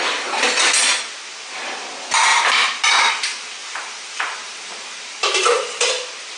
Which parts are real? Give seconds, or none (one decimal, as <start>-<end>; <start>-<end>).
0.0-3.6; 5.9-6.4